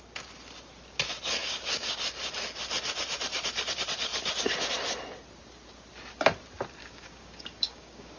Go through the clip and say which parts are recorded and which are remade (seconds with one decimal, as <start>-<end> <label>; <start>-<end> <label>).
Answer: 0.0-1.4 recorded; 1.4-2.0 remade; 2.0-6.8 recorded; 6.8-8.2 remade

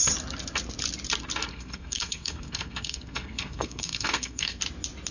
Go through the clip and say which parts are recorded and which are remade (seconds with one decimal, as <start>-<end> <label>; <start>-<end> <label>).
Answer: 0.0-1.5 recorded; 1.5-4.6 remade; 4.6-5.1 recorded

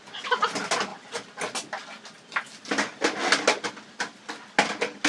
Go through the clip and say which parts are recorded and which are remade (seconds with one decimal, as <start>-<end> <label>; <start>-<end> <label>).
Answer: 0.0-5.1 recorded

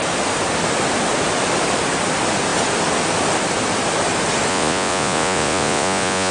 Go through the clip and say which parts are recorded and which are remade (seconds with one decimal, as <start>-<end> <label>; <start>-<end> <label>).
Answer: 0.0-4.5 recorded; 4.5-6.3 remade

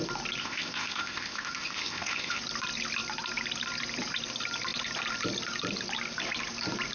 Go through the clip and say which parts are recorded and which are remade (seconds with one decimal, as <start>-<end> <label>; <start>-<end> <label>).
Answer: 0.0-0.4 recorded; 0.4-2.4 remade; 2.4-6.9 recorded